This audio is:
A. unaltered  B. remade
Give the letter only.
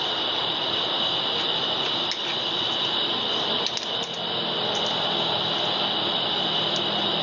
A